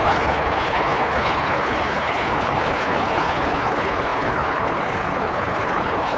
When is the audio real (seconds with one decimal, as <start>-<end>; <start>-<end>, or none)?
none